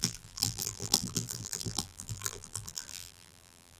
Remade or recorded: remade